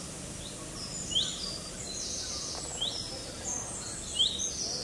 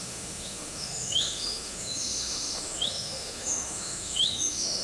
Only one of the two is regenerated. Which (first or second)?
second